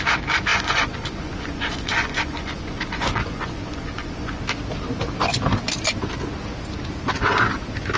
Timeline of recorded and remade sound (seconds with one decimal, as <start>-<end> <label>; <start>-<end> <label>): 0.0-0.5 recorded; 0.5-4.4 remade; 4.4-8.0 recorded